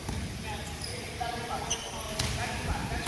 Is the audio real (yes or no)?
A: yes